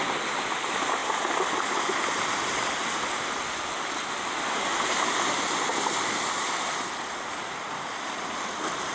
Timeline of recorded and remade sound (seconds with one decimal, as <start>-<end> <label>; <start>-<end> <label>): 0.0-8.9 recorded

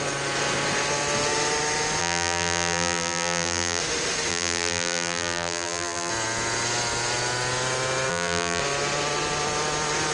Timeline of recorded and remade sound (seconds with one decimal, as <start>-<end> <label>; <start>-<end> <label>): 0.0-2.0 recorded; 2.0-3.8 remade; 3.8-4.3 recorded; 4.3-6.1 remade; 6.1-8.1 recorded; 8.1-8.6 remade; 8.6-10.1 recorded

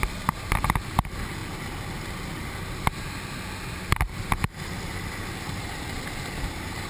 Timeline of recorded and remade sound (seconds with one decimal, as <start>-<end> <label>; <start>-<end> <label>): 0.0-1.4 remade; 1.4-3.7 recorded; 3.7-6.9 remade

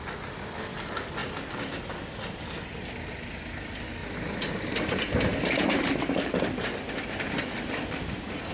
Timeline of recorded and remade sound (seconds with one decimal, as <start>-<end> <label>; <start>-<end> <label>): 0.0-1.2 recorded; 1.2-1.8 remade; 1.8-4.0 recorded; 4.0-6.3 remade; 6.3-8.5 recorded

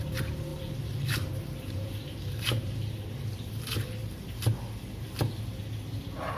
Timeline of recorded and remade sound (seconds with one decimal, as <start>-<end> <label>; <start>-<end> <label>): 0.0-0.5 recorded; 0.5-4.3 remade; 4.3-6.4 recorded

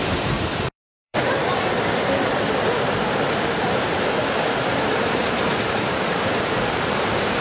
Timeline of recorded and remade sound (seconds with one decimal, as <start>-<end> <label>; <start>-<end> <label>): 0.0-1.5 remade; 1.5-4.7 recorded; 4.7-7.4 remade

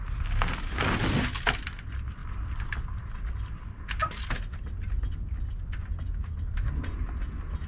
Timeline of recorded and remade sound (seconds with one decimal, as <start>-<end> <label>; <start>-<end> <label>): 0.0-7.7 recorded